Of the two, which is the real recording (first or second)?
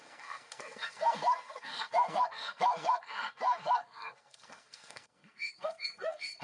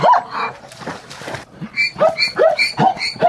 second